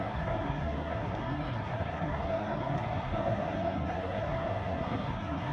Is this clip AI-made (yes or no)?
yes